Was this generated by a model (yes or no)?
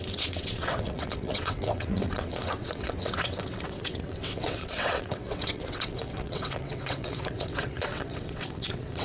yes